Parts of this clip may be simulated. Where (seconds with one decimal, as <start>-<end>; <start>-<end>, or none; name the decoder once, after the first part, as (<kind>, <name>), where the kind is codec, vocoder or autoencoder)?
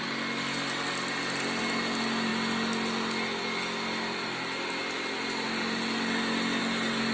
none